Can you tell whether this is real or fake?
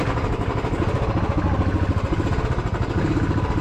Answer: real